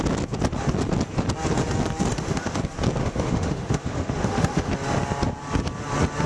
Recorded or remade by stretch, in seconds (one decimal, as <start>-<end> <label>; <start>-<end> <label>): 0.0-2.1 recorded; 2.1-2.6 remade; 2.6-3.0 recorded; 3.0-4.7 remade; 4.7-6.3 recorded